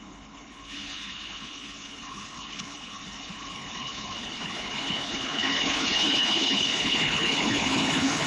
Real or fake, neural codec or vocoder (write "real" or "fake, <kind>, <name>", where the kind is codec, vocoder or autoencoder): fake, codec, HILCodec